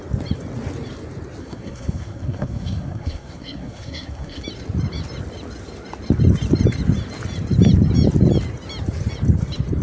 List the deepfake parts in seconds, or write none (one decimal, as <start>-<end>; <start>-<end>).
1.4-4.4